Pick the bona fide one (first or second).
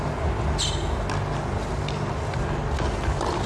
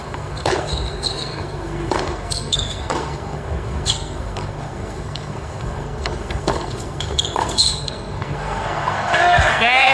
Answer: first